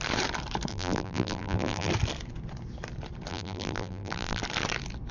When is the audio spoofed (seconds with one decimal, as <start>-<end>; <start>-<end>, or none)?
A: 0.7-1.9; 3.3-4.4